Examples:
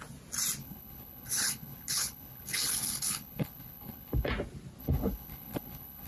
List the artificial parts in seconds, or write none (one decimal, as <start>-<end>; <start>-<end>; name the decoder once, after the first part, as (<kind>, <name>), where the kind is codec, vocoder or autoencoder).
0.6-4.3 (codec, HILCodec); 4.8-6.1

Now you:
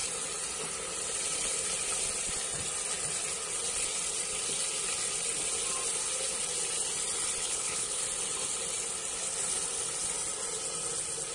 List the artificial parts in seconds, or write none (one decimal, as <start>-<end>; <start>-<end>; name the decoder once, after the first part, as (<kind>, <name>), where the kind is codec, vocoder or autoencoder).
7.4-8.0 (codec, HILCodec)

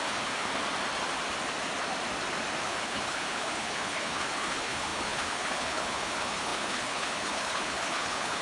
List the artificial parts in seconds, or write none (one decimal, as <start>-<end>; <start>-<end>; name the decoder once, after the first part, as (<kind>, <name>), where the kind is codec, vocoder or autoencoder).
0.0-0.5 (codec, HILCodec); 2.6-8.4

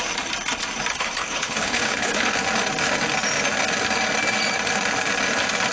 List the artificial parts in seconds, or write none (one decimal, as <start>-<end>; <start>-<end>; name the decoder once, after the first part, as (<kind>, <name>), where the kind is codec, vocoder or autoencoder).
0.9-2.3 (codec, HILCodec)

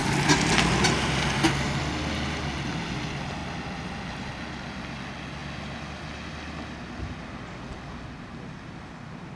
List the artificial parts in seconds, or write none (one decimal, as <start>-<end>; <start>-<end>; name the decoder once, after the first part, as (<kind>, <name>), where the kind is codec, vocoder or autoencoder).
none

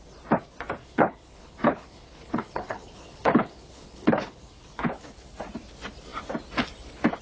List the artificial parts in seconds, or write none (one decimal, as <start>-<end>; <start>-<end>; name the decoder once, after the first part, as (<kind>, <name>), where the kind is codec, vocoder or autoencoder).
0.8-4.9 (codec, HILCodec)

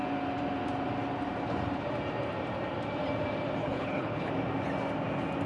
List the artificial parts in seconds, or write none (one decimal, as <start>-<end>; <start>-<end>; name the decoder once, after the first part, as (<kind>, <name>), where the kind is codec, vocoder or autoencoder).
3.6-4.3 (codec, HILCodec)